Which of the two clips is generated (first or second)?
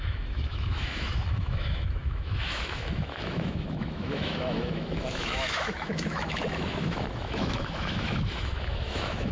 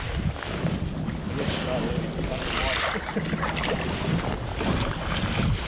first